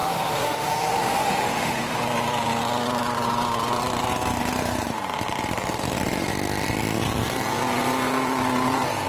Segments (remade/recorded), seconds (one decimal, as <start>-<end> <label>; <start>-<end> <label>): 0.0-2.0 remade; 2.0-9.1 recorded